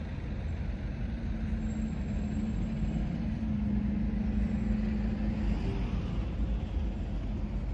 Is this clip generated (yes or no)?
no